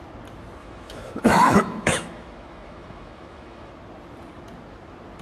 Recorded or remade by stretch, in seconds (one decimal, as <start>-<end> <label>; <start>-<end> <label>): 0.0-0.6 recorded; 0.6-3.7 remade; 3.7-5.2 recorded